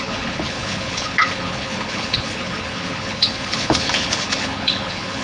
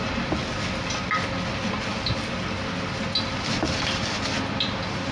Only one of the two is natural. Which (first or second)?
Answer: second